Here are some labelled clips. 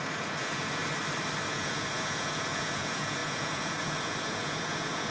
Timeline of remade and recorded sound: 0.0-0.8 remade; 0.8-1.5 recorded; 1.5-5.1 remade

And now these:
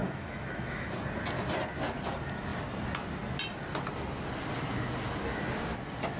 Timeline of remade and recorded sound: 0.0-0.9 remade; 0.9-6.2 recorded

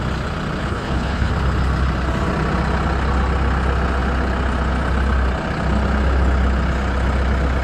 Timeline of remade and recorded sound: 0.0-0.6 recorded; 0.6-1.3 remade; 1.3-7.6 recorded

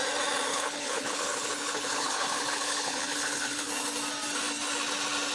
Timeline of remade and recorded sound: 0.0-0.5 recorded; 0.5-3.7 remade; 3.7-5.3 recorded

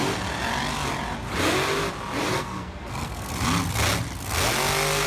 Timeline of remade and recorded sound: 0.0-2.3 recorded; 2.3-3.3 remade; 3.3-5.1 recorded